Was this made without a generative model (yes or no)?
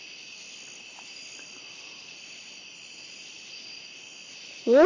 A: yes